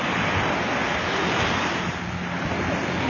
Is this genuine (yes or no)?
yes